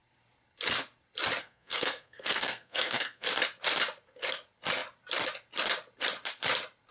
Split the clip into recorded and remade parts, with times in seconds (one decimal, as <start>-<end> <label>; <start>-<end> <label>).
0.0-1.4 recorded; 1.4-3.3 remade; 3.3-6.9 recorded